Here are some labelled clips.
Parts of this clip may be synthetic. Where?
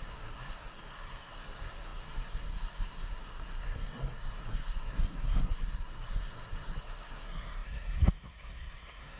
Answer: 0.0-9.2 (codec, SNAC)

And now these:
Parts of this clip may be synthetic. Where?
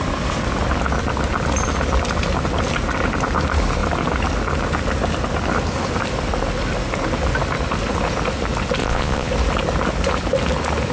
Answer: 8.8-9.3 (vocoder, Vocos)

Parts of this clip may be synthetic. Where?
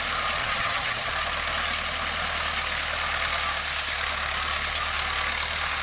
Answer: 0.4-1.1 (vocoder, HiFi-GAN)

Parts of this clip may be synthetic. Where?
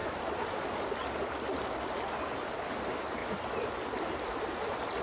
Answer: none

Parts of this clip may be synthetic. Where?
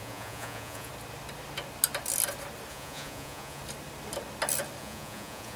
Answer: 0.0-0.9 (vocoder, Vocos); 2.7-3.6; 4.8-5.6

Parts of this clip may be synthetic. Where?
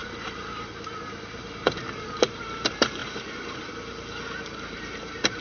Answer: 0.0-5.4 (vocoder, BigVGAN v2)